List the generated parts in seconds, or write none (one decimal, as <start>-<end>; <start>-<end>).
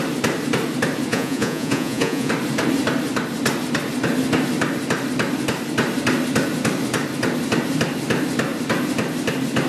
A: 1.1-2.3